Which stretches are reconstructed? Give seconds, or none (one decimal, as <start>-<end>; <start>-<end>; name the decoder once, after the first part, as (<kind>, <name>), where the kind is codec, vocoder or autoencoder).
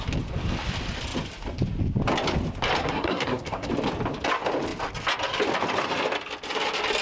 2.8-3.7 (codec, SNAC)